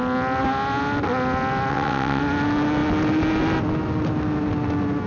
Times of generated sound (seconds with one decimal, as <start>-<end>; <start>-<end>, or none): 1.7-2.2